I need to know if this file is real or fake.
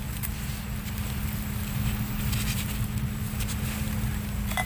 real